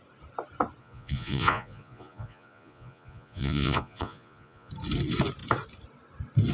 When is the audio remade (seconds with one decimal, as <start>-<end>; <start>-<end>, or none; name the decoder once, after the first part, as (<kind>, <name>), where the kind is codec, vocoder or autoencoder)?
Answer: 0.8-4.7 (vocoder, Vocos)